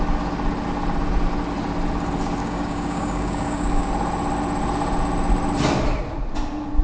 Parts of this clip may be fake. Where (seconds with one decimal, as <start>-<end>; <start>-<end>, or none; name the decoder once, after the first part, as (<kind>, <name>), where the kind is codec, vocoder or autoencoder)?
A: 2.4-3.9 (codec, DAC)